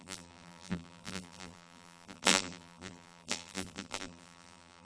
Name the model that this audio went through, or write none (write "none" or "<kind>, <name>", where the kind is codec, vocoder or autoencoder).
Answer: vocoder, BigVGAN v2